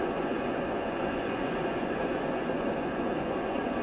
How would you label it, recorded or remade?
remade